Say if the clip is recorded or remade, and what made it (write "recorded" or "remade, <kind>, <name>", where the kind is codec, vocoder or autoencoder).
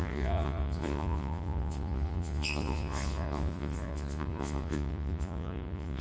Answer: remade, vocoder, Vocos